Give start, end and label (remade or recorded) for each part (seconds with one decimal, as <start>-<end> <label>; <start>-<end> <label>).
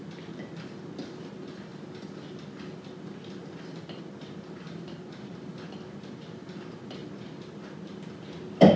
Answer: 0.0-8.8 recorded